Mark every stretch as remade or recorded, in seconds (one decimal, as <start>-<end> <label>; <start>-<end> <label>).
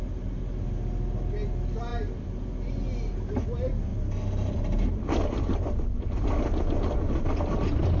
0.0-8.0 recorded